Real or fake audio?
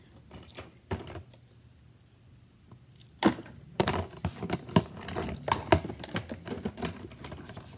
real